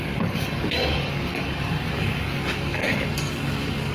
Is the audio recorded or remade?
remade